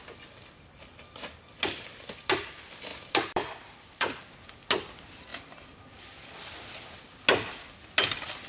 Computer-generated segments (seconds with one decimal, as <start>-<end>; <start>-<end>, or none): 2.9-4.2; 5.3-6.9